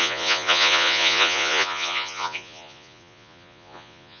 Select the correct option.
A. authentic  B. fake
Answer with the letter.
B